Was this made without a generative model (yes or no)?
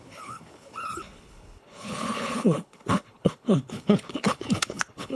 no